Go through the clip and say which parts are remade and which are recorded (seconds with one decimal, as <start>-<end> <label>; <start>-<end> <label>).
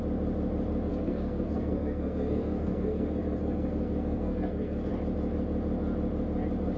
0.0-0.9 recorded; 0.9-4.9 remade; 4.9-6.8 recorded